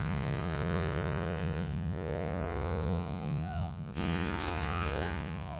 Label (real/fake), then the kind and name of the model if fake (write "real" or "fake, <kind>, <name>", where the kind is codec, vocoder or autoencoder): fake, vocoder, Vocos